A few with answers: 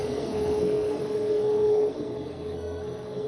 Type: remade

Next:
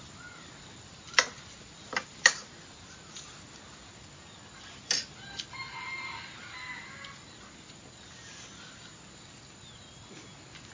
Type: recorded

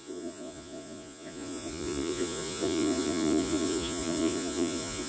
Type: remade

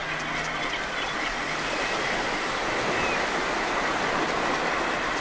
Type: recorded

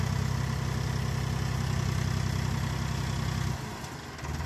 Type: recorded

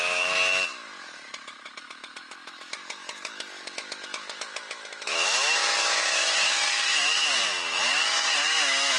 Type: remade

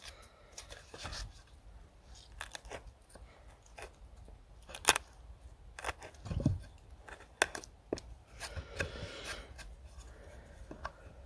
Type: recorded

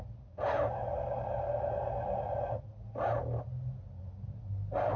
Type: recorded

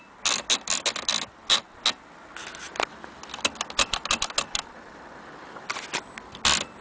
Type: recorded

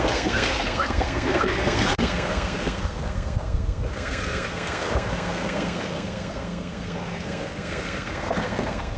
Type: remade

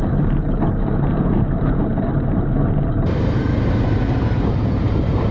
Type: remade